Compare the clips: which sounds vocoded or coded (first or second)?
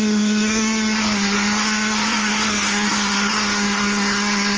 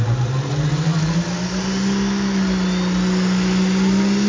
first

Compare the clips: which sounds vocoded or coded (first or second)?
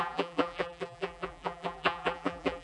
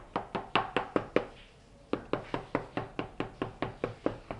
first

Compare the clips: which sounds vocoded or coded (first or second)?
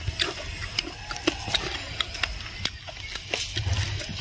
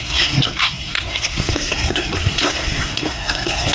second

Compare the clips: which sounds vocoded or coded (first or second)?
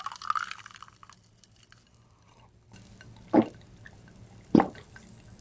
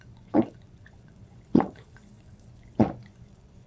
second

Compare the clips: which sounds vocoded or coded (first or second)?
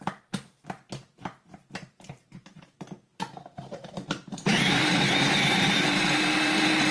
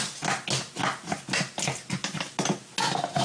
first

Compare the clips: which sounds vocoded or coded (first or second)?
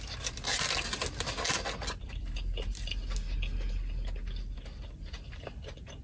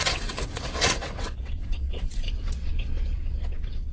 second